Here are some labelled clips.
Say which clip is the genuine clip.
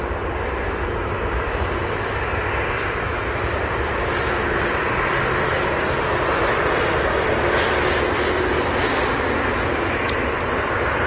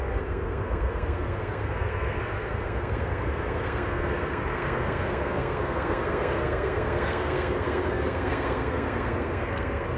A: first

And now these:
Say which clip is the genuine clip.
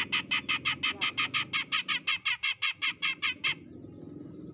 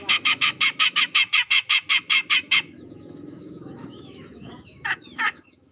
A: first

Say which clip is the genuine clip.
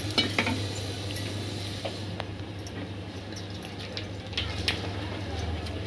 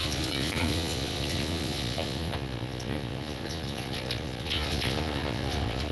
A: first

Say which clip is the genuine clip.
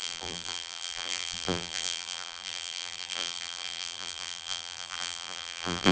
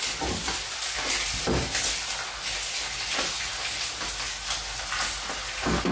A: second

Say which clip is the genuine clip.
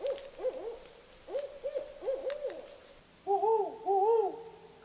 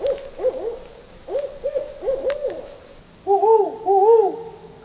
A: first